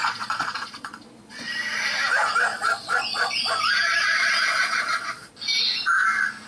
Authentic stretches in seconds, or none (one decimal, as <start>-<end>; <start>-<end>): 1.5-2.5; 3.5-4.0; 5.3-6.5